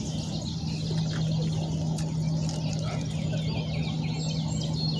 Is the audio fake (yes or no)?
no